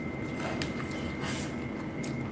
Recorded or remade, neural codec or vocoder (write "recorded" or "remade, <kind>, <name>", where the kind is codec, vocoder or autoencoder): recorded